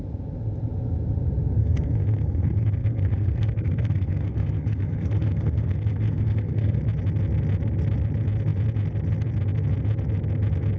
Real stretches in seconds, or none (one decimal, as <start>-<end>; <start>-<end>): 0.0-1.6; 6.8-10.8